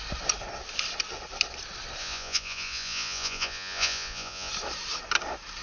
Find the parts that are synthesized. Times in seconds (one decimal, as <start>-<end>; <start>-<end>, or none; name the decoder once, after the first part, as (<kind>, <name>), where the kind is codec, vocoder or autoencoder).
2.0-4.5 (vocoder, Vocos)